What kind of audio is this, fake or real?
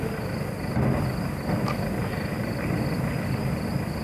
real